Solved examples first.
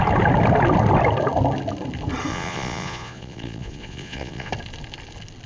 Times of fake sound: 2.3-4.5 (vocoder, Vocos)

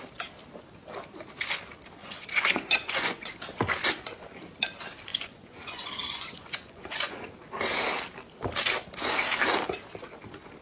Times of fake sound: 2.0-3.3 (vocoder, Vocos); 5.1-7.3

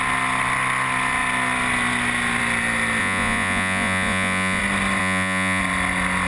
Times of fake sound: 3.0-4.6 (vocoder, Vocos); 5.0-5.6

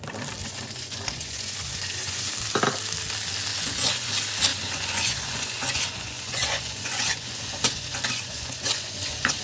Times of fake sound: 0.4-2.3 (vocoder, Vocos); 3.5-4.1; 4.5-9.4